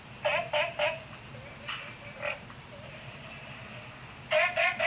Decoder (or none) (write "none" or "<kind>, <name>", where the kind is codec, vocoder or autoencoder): none